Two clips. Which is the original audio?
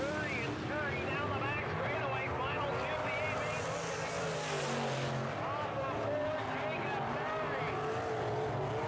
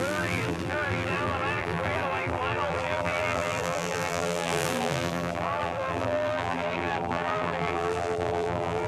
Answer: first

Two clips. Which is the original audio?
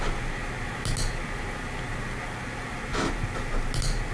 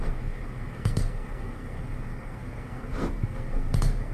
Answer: first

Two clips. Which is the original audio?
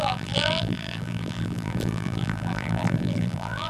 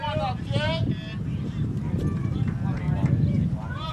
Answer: second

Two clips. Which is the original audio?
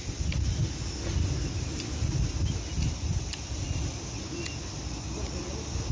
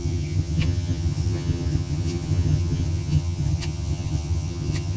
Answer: first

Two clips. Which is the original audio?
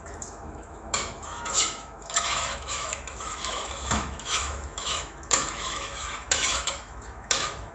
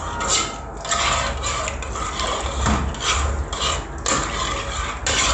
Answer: second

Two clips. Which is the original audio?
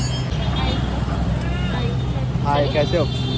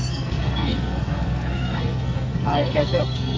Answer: first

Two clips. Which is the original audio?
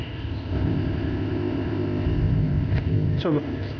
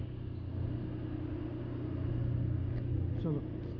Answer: second